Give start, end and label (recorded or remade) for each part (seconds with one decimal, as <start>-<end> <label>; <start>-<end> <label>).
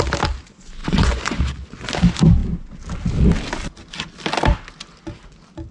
0.0-0.8 recorded; 0.8-1.4 remade; 1.4-5.7 recorded